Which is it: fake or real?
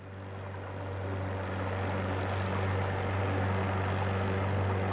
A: real